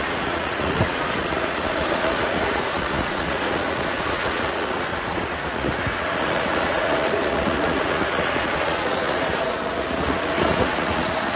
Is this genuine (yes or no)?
no